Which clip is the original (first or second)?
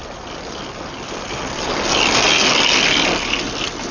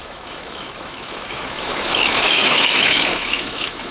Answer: first